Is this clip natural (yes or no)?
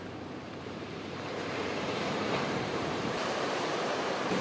no